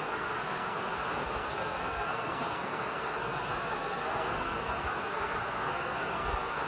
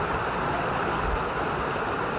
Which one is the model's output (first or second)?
first